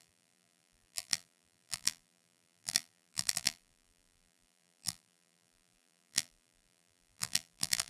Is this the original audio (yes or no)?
no